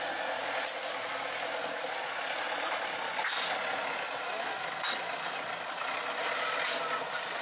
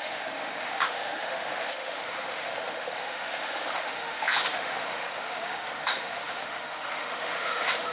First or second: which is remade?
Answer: second